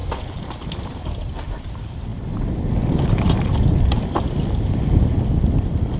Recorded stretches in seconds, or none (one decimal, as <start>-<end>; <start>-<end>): 0.0-6.0